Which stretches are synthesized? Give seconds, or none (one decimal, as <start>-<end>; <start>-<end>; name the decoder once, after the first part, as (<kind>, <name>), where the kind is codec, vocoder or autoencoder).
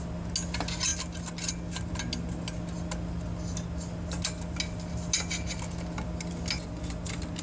none